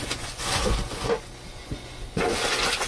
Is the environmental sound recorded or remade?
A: remade